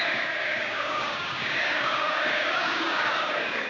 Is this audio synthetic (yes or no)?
yes